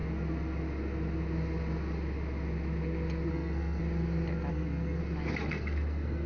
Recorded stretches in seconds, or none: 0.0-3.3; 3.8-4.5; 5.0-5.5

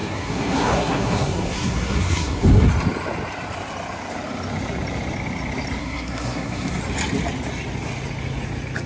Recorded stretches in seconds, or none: 2.7-5.8; 6.8-8.9

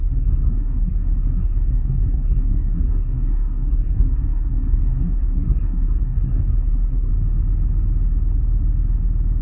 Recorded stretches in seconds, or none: 7.1-9.4

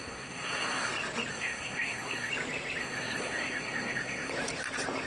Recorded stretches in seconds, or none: 0.9-1.3; 2.3-2.8; 4.3-5.1

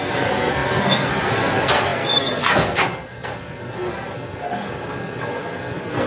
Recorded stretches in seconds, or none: none

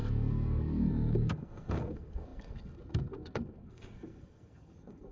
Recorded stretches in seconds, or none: none